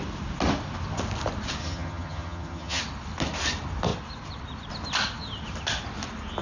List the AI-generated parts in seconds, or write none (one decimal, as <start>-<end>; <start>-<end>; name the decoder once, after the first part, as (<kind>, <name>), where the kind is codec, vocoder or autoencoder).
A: 1.6-2.8 (vocoder, HiFi-GAN)